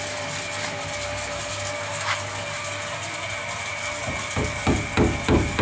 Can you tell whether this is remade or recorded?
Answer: recorded